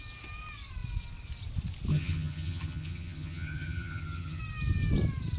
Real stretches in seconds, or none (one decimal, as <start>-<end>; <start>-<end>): 0.0-1.9; 4.4-5.4